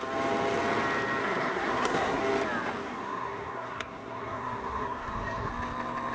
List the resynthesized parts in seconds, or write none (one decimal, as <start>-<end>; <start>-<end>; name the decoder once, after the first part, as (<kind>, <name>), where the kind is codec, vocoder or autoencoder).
1.2-2.2 (codec, SNAC); 2.8-5.5

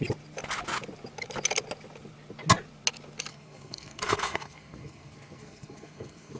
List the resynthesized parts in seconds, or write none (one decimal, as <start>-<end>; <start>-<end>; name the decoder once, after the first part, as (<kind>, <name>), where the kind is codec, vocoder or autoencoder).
3.3-6.4 (codec, SNAC)

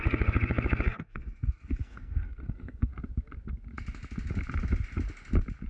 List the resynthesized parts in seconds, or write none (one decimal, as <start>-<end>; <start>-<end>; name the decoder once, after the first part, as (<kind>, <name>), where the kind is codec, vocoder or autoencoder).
0.0-2.9 (codec, SNAC)

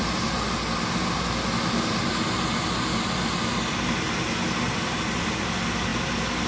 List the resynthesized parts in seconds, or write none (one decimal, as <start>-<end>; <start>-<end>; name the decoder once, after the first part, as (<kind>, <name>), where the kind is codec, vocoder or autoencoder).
none

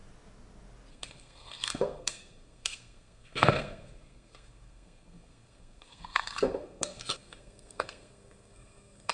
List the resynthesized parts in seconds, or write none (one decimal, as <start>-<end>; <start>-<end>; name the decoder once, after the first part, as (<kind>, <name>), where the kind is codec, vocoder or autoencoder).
0.9-9.1 (codec, SNAC)

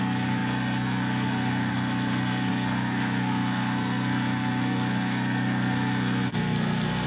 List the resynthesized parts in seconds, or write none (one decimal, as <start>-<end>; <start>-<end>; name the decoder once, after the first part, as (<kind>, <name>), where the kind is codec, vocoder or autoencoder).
0.0-7.1 (codec, SNAC)

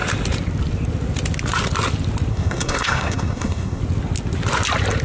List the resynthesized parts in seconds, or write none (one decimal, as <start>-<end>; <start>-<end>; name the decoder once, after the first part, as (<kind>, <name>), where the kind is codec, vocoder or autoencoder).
2.3-3.8 (codec, SNAC)

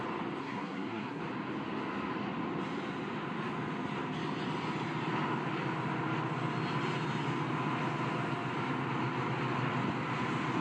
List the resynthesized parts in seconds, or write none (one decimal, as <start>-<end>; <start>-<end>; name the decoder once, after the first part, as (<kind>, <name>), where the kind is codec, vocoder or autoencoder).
0.4-1.2 (codec, SNAC)